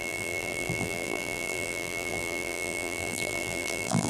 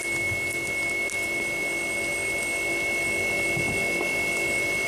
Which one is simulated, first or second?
first